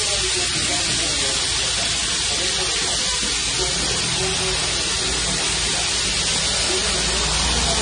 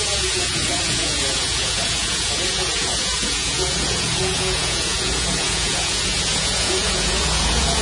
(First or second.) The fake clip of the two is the second